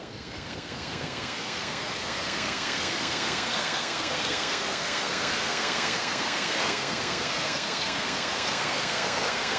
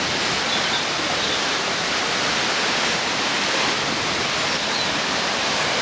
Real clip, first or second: second